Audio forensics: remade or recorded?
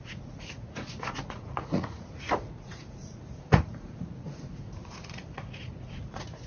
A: remade